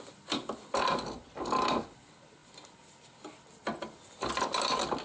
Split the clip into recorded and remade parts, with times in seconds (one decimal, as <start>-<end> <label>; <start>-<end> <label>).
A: 0.0-5.0 recorded